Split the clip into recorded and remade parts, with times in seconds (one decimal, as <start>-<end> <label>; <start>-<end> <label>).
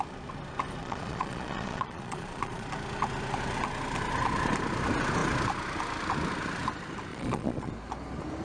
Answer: 0.0-0.8 recorded; 0.8-2.7 remade; 2.7-7.1 recorded; 7.1-7.7 remade; 7.7-8.4 recorded